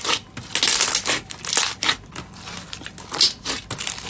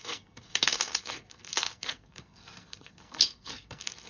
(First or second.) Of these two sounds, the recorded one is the first